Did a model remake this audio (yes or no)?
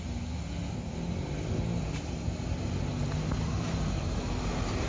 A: no